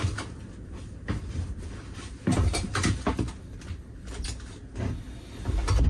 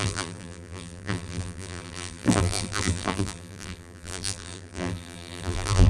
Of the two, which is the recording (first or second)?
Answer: first